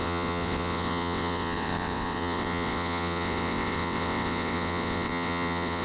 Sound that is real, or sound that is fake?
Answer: fake